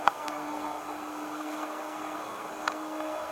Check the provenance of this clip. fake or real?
fake